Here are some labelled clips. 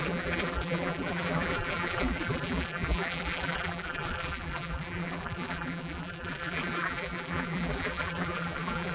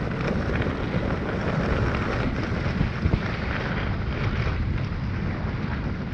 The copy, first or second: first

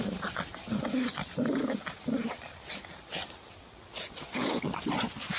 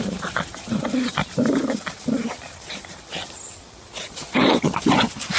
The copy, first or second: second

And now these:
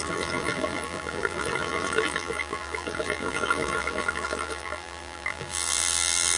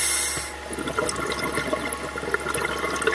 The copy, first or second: first